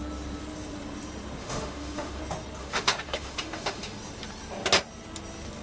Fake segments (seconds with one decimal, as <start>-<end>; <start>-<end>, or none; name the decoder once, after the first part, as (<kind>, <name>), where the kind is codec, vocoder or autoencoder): 1.4-2.2 (autoencoder, DAC-VAE); 2.6-4.0